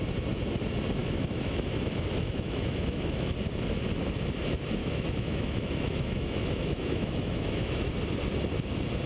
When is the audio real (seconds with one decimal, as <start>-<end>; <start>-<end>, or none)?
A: 0.0-1.0; 3.3-4.8; 7.9-9.1